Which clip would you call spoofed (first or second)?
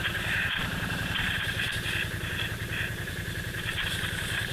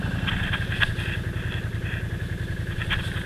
first